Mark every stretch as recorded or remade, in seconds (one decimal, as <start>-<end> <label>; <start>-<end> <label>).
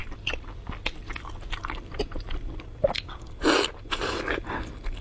0.0-5.0 recorded